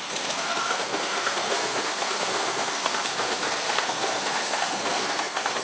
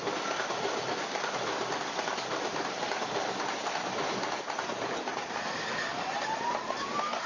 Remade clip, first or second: first